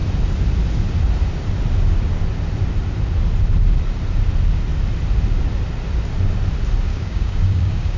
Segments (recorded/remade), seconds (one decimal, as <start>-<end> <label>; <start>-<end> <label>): 0.0-6.9 recorded; 6.9-8.0 remade